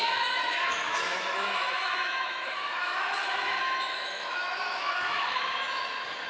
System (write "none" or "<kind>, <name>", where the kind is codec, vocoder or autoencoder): autoencoder, DAC-VAE